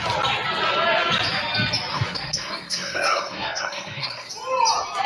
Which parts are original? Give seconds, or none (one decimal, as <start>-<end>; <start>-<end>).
0.0-1.9; 4.3-5.1